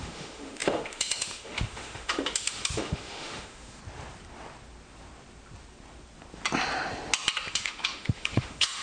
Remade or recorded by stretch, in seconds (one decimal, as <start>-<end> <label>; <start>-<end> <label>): 0.0-3.8 remade; 3.8-7.5 recorded; 7.5-8.8 remade